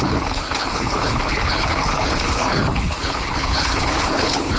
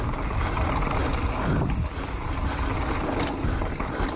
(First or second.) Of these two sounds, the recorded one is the second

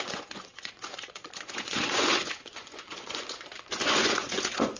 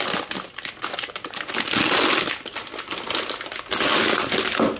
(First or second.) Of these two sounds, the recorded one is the second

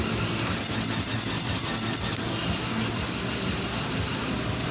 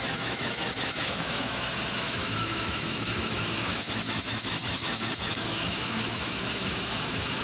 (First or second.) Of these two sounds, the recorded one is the first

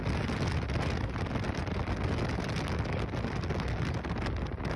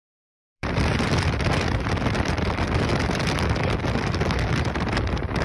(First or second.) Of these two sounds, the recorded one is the first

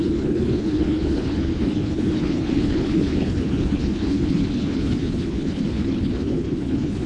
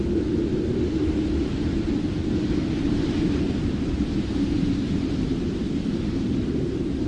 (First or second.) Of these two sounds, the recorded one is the second